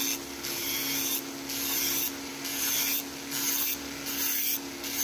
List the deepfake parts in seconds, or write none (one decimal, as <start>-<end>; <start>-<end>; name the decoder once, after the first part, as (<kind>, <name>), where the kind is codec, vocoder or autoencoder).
none